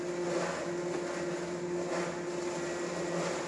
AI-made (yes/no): no